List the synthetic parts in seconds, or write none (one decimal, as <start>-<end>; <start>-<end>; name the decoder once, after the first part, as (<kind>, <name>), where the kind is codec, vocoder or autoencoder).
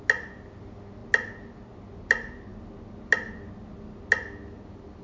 none